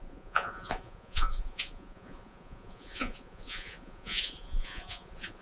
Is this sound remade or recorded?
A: remade